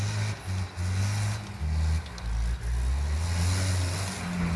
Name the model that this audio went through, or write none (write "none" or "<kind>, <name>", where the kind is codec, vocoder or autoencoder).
none